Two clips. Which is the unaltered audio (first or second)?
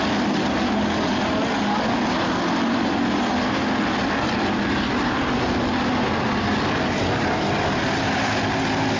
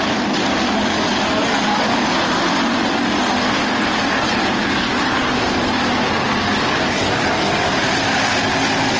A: first